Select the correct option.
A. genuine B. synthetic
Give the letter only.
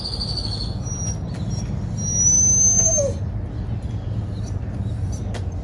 A